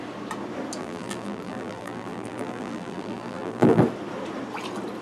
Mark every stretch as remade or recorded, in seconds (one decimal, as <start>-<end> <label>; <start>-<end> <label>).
0.0-0.8 recorded; 0.8-3.8 remade; 3.8-5.0 recorded